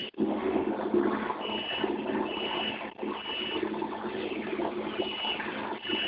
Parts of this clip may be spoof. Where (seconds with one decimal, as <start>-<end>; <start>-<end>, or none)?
0.0-0.7